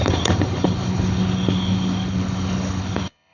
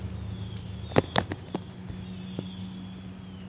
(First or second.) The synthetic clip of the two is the first